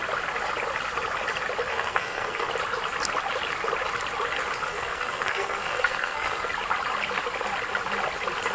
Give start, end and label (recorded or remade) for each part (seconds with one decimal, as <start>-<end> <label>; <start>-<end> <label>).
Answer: 0.0-1.7 recorded; 1.7-2.5 remade; 2.5-4.6 recorded; 4.6-6.5 remade; 6.5-8.5 recorded